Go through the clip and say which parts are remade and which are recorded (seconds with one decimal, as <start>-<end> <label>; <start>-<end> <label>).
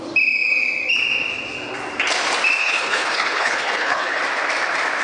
0.0-2.6 recorded; 2.6-4.2 remade; 4.2-5.0 recorded